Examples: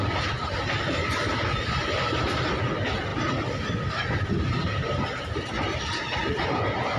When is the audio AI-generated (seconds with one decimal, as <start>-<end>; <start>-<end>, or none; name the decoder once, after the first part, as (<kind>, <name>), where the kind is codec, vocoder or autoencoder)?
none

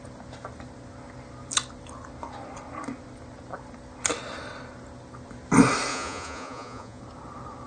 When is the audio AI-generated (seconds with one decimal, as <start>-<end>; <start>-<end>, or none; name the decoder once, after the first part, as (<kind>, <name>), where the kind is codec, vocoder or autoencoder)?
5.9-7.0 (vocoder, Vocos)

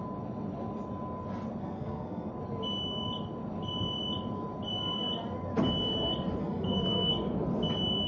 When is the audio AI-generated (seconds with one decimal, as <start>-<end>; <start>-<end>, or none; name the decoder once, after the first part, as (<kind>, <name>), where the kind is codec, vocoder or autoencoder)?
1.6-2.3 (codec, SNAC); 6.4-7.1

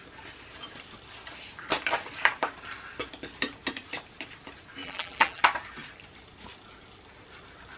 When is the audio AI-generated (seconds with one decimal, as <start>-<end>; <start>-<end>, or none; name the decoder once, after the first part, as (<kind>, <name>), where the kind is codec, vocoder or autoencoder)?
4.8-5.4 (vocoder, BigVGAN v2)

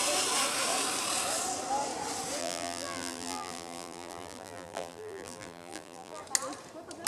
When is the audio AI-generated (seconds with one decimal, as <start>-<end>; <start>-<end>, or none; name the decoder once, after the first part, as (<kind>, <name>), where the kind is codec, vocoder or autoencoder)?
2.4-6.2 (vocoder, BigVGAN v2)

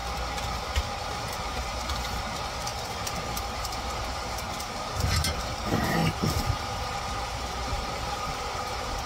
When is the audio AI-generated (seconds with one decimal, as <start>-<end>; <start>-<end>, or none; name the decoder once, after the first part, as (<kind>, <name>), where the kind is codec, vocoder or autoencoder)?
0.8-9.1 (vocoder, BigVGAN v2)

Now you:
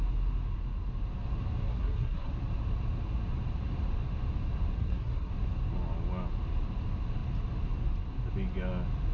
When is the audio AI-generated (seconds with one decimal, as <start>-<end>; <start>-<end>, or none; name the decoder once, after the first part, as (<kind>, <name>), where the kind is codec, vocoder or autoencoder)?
1.7-2.3 (codec, SNAC); 4.8-5.3

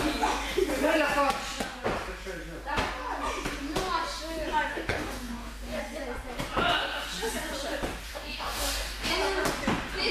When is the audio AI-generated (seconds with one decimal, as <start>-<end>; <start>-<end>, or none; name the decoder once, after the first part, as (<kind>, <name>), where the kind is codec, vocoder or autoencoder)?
4.7-5.8 (codec, DAC); 8.1-9.1